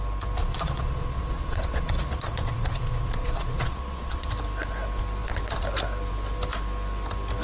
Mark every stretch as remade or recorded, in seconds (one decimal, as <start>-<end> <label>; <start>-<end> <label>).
0.0-0.4 recorded; 0.4-4.3 remade; 4.3-7.4 recorded